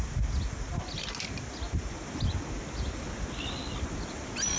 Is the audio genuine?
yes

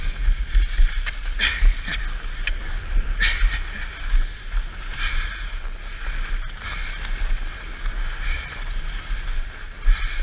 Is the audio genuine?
yes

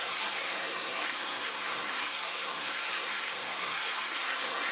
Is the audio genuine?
no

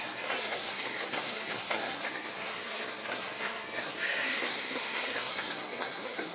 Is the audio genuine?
no